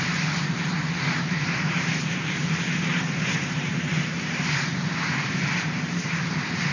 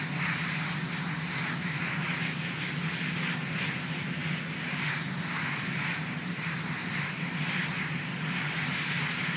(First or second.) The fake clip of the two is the first